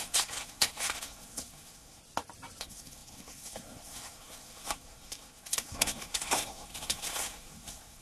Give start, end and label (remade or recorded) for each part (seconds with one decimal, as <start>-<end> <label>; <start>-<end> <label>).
0.0-2.0 remade; 2.0-2.6 recorded; 2.6-8.0 remade